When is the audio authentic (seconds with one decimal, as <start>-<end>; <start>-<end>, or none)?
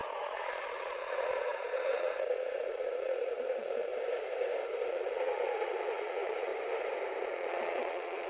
3.9-4.9; 6.5-7.2